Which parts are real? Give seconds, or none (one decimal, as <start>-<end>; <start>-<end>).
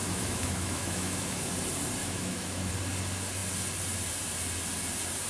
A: 1.5-2.0; 2.7-5.3